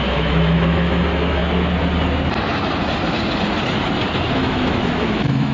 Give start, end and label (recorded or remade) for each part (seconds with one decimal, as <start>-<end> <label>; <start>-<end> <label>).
0.0-1.4 remade; 1.4-4.3 recorded; 4.3-5.5 remade